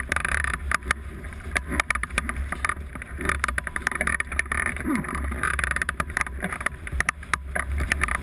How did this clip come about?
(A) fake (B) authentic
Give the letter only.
A